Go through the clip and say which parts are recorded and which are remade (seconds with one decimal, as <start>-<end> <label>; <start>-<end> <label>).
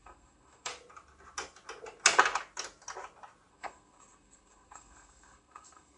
0.0-0.7 remade; 0.7-3.5 recorded; 3.5-6.0 remade